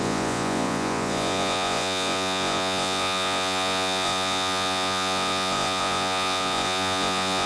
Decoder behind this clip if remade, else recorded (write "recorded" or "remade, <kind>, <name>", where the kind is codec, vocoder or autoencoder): remade, vocoder, Vocos